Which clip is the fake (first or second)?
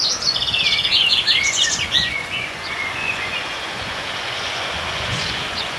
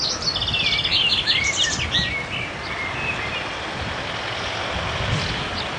first